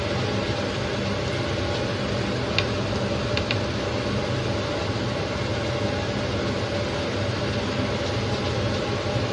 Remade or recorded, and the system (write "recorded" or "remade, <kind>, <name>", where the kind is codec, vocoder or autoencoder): recorded